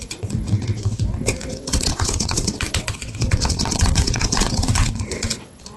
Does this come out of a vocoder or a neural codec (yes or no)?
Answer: yes